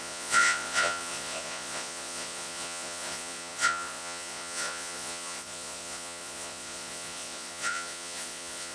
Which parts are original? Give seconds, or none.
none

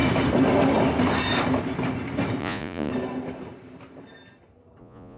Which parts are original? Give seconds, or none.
0.0-2.4; 2.9-4.8

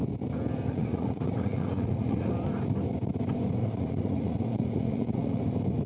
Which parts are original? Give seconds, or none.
0.0-0.7; 2.3-3.6; 5.4-5.9